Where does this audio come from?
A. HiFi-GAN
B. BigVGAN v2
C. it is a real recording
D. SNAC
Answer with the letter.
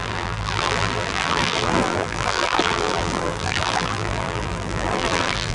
B